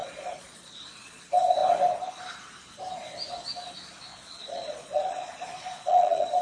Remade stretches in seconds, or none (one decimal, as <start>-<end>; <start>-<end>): 0.0-1.2; 4.1-6.4